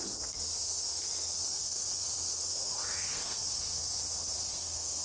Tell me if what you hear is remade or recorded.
remade